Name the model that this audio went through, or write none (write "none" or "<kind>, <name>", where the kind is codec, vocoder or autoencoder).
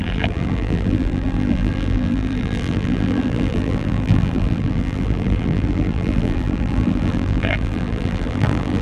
vocoder, BigVGAN v2